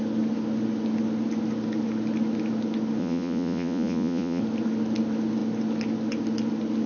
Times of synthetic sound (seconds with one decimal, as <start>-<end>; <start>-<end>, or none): 3.0-4.4